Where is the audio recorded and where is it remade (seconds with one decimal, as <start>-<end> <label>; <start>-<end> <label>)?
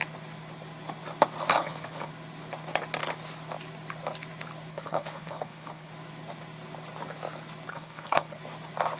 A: 0.0-1.5 recorded; 1.5-2.1 remade; 2.1-4.7 recorded; 4.7-5.9 remade; 5.9-7.7 recorded; 7.7-8.4 remade; 8.4-9.0 recorded